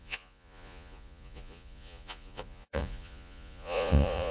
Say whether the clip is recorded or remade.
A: remade